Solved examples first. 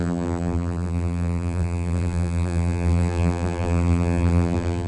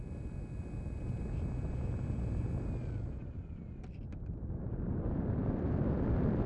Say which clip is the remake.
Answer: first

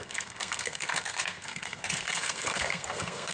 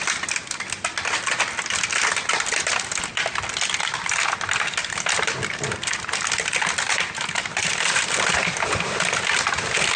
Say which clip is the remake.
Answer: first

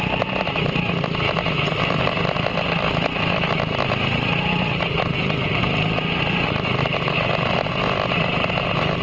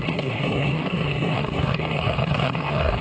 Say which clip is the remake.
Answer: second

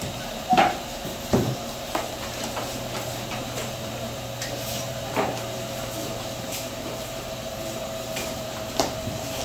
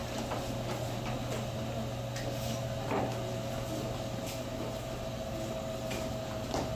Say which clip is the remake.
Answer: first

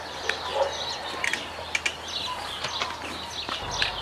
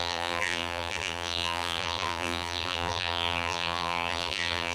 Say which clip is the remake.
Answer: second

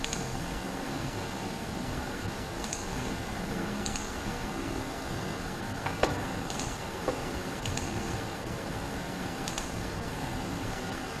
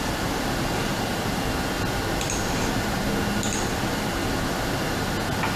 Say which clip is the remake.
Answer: first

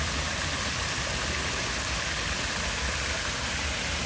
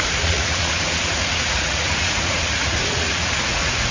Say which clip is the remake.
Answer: second